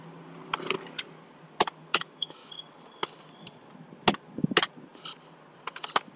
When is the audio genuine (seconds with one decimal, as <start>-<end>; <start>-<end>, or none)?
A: 0.0-1.9; 2.5-6.2